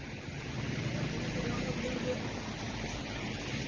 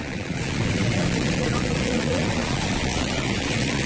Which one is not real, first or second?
second